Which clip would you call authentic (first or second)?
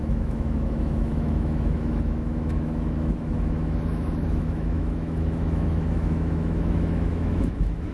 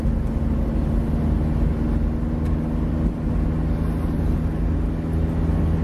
second